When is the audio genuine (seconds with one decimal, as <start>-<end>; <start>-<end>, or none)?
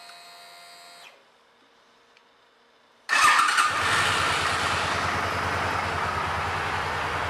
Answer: 0.0-7.3